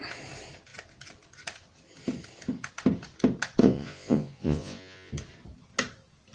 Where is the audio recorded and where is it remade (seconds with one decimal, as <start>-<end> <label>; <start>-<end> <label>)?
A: 0.0-3.6 recorded; 3.6-5.1 remade; 5.1-6.3 recorded

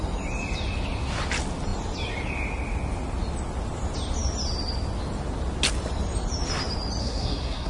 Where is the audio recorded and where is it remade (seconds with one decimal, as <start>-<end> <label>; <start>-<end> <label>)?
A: 0.0-7.0 recorded; 7.0-7.7 remade

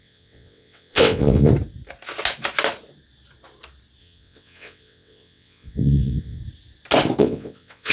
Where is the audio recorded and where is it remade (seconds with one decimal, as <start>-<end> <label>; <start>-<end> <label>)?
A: 0.0-1.5 remade; 1.5-4.0 recorded; 4.0-6.4 remade; 6.4-7.2 recorded; 7.2-7.9 remade